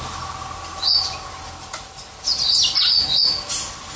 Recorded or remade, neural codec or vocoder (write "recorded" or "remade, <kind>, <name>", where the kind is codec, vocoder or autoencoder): recorded